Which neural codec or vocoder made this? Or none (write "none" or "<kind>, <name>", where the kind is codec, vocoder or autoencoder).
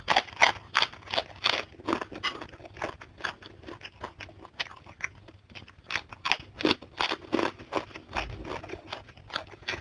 none